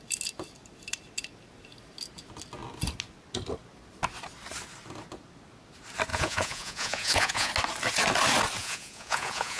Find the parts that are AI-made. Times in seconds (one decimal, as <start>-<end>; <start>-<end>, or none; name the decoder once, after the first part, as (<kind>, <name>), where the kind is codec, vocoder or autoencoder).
6.1-7.5 (vocoder, Vocos); 8.6-9.6